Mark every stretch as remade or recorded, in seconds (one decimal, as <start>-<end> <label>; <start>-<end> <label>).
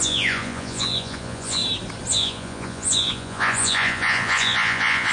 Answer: 0.0-1.6 remade; 1.6-2.1 recorded; 2.1-5.1 remade